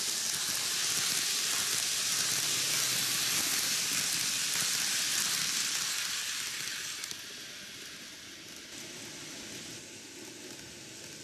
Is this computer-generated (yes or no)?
no